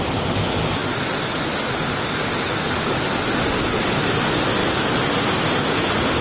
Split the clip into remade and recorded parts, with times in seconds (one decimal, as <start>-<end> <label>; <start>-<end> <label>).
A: 0.0-6.2 recorded